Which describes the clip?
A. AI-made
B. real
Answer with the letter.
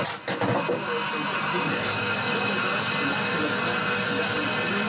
B